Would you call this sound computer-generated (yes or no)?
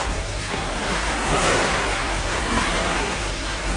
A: yes